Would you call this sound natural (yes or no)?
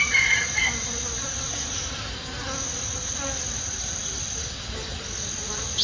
yes